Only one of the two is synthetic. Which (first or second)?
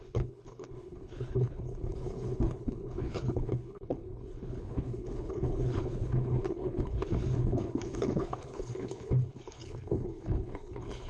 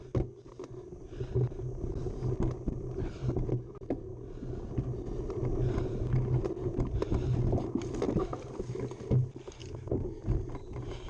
first